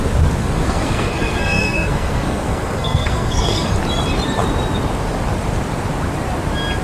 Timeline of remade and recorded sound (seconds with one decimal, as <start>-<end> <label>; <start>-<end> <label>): 0.0-0.4 recorded; 0.4-3.7 remade; 3.7-6.8 recorded